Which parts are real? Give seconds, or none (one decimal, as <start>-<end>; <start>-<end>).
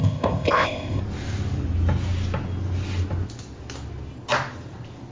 1.0-5.1